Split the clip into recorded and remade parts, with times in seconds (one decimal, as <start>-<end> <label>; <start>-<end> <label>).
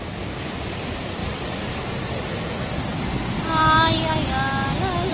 0.0-1.2 recorded; 1.2-1.8 remade; 1.8-5.1 recorded